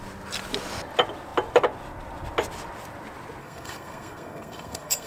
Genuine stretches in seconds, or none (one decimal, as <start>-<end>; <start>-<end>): 0.0-3.4